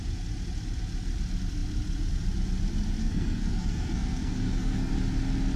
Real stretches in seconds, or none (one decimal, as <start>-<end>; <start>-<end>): 0.0-3.0; 4.9-5.6